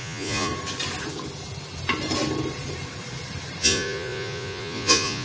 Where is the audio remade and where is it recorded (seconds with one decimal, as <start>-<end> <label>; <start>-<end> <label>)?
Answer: 0.0-0.5 remade; 0.5-3.6 recorded; 3.6-5.2 remade